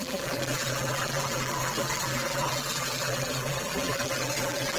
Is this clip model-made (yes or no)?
yes